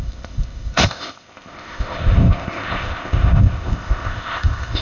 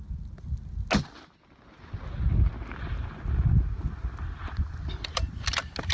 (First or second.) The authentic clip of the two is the second